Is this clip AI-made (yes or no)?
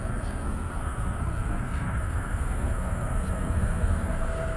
yes